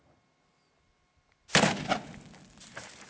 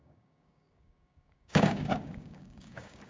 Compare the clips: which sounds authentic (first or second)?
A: first